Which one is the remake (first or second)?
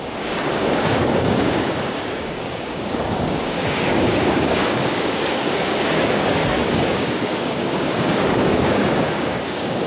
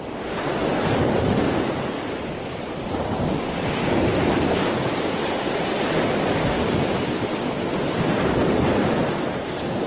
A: first